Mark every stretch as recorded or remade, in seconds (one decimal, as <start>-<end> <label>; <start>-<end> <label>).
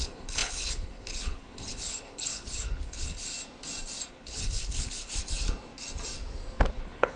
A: 0.0-3.3 remade; 3.3-4.1 recorded; 4.1-5.1 remade; 5.1-6.7 recorded; 6.7-7.2 remade